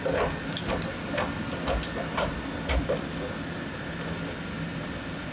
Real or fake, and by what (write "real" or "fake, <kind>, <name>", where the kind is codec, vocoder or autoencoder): real